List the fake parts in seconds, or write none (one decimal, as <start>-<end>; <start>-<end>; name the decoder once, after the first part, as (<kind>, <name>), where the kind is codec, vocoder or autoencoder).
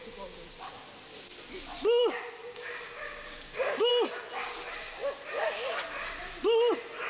2.4-3.9 (codec, DAC)